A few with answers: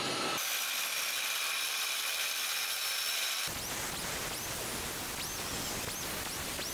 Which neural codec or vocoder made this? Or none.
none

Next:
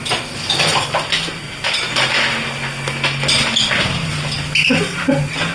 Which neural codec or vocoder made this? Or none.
none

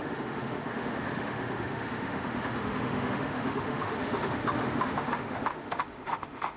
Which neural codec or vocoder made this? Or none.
autoencoder, DAC-VAE